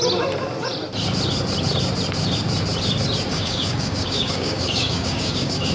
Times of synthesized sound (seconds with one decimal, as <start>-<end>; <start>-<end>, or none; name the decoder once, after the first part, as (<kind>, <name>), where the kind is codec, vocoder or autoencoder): 3.3-5.7 (codec, DAC)